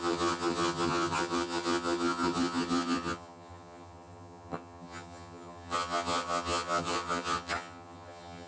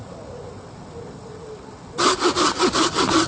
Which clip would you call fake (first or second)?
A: first